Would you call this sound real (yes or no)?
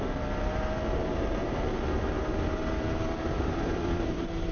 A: no